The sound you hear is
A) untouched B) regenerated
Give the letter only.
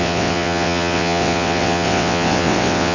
B